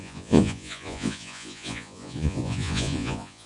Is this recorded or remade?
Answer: remade